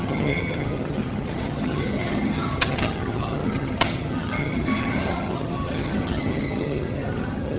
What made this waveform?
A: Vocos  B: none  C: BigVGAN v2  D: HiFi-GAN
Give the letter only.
D